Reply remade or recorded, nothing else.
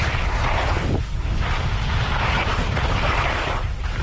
remade